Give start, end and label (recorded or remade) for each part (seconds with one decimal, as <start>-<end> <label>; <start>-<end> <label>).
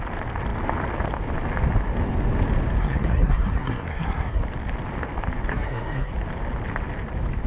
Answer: 0.0-2.8 recorded; 2.8-4.4 remade; 4.4-5.5 recorded; 5.5-6.1 remade; 6.1-7.5 recorded